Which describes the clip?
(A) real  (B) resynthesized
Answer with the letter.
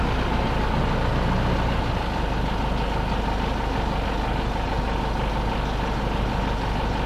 A